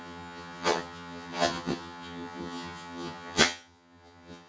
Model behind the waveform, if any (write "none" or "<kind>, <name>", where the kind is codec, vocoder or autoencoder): vocoder, HiFi-GAN